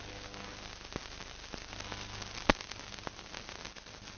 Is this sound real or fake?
real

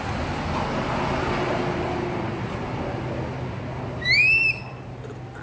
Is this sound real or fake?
real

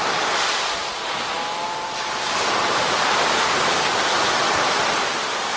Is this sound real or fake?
fake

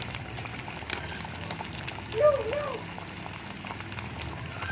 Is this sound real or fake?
real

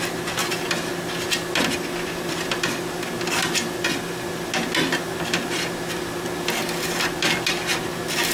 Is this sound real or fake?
real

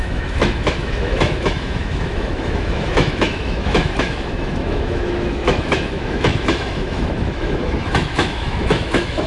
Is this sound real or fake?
fake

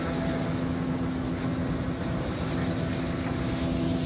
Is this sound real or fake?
real